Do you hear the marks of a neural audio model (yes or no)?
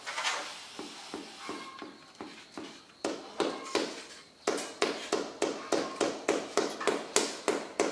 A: no